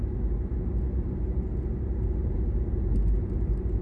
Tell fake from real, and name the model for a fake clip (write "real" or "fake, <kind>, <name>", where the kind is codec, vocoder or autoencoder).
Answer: real